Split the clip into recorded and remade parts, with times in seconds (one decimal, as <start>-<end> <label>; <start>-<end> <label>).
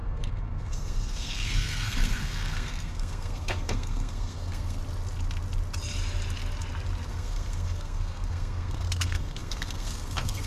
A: 0.0-4.8 remade; 4.8-7.1 recorded; 7.1-10.5 remade